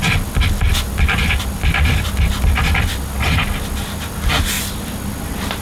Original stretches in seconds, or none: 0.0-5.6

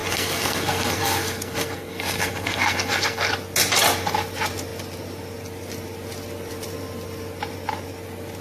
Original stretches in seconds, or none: 3.3-8.4

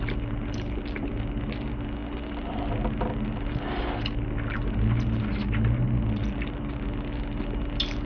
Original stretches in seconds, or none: 0.0-8.1

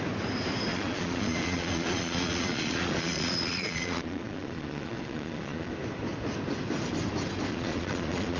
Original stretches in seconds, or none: 0.0-0.7; 5.7-7.5

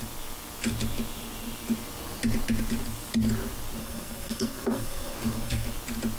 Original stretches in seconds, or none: 0.0-3.8; 5.7-6.2

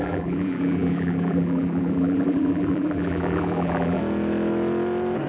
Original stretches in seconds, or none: 4.0-5.3

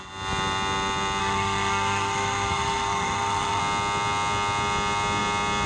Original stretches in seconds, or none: 0.0-1.2; 3.6-5.7